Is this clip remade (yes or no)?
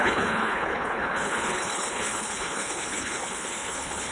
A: yes